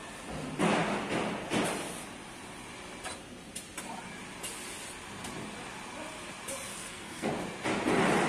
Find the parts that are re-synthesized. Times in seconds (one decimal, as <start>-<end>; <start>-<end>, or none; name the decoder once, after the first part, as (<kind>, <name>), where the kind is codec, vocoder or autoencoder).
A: 6.7-7.3 (codec, SNAC)